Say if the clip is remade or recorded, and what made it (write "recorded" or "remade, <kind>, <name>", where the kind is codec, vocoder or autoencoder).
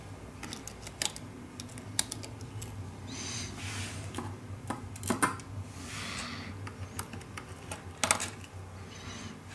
recorded